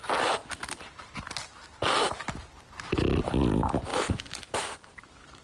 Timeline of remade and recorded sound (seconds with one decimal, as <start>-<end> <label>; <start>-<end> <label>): 0.0-3.9 recorded; 3.9-5.4 remade